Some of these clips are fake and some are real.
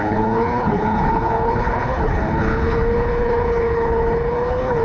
fake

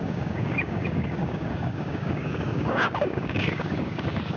fake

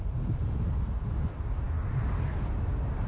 real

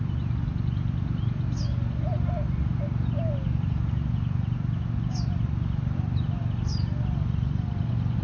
real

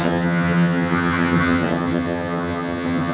fake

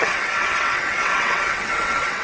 fake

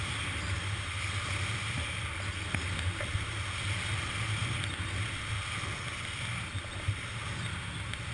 real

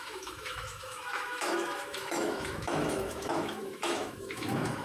fake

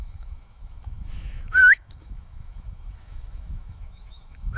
fake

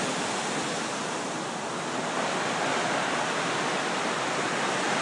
real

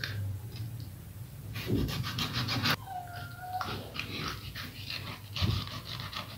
real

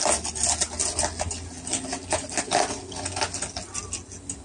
real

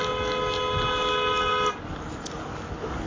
real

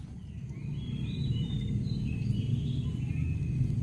real